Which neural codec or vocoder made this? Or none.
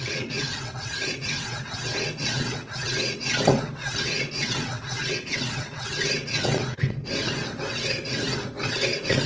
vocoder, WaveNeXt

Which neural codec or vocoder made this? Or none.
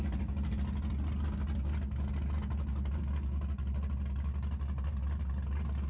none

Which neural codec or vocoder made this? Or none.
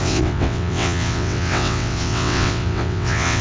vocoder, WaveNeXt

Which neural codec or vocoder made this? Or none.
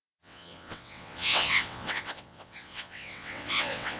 vocoder, WaveNeXt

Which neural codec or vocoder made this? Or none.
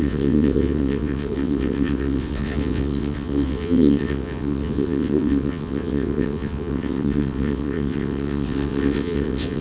vocoder, WaveNeXt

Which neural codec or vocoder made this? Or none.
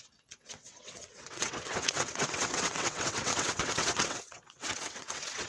vocoder, WaveNeXt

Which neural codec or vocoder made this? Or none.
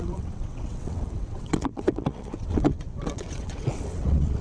vocoder, WaveNeXt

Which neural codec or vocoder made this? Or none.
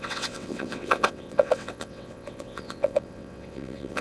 vocoder, WaveNeXt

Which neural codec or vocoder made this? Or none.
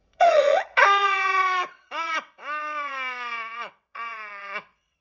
vocoder, WaveNeXt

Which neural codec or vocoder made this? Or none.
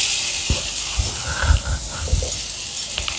none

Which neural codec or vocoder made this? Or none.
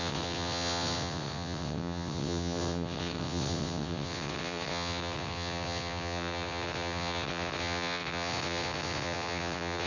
vocoder, WaveNeXt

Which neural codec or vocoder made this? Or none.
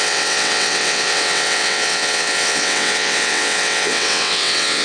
vocoder, WaveNeXt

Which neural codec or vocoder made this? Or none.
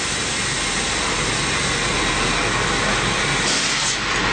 none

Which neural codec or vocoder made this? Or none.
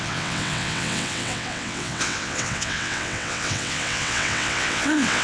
vocoder, WaveNeXt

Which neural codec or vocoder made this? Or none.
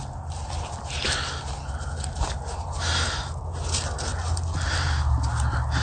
none